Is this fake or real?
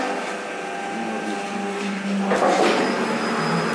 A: real